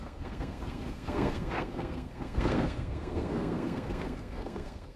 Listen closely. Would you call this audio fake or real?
fake